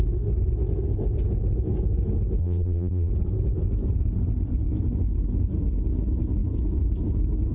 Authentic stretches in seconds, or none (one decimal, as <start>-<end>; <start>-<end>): 0.0-2.4; 3.1-7.5